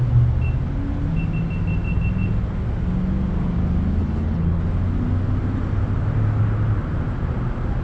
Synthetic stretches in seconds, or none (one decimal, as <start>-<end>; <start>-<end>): 4.0-4.6